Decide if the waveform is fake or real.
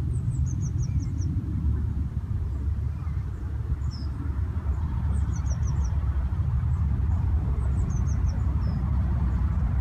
fake